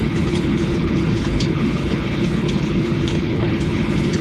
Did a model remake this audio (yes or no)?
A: yes